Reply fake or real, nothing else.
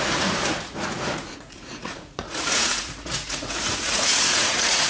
fake